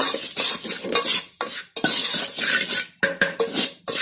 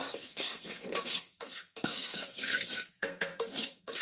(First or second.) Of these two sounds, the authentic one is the first